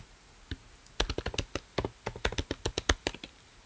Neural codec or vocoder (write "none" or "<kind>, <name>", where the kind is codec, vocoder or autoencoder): none